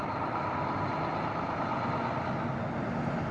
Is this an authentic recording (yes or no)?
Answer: yes